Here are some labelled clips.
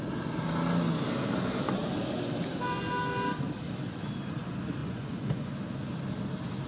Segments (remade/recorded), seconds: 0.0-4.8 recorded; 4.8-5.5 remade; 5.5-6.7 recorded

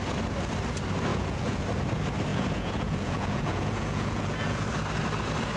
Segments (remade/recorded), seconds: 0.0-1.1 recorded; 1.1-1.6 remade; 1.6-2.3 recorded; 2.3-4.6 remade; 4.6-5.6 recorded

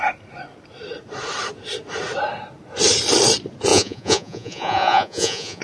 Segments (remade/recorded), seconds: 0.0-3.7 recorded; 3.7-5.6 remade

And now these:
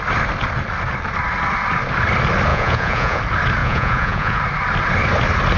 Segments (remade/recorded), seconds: 0.0-2.5 recorded; 2.5-3.2 remade; 3.2-3.6 recorded; 3.6-4.4 remade; 4.4-5.6 recorded